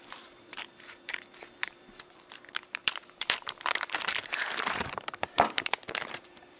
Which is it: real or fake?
fake